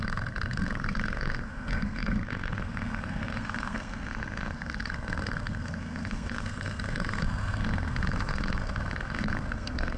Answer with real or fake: fake